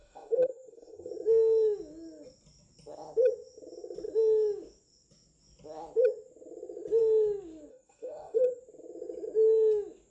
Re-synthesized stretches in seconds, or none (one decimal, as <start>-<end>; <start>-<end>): 0.0-1.1; 7.7-8.6